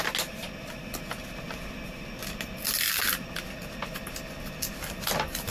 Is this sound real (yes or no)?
yes